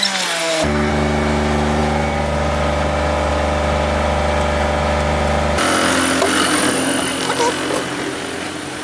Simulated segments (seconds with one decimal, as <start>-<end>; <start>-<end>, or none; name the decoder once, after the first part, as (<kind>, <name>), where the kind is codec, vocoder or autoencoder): 0.4-0.9 (codec, SNAC)